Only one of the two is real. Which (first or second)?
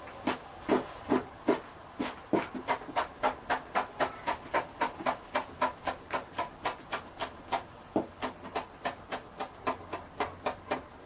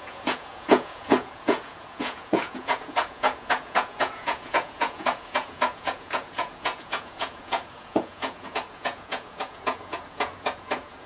first